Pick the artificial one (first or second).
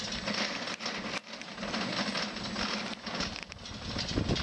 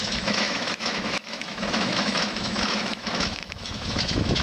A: second